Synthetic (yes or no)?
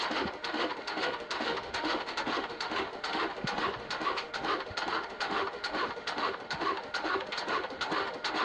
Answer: yes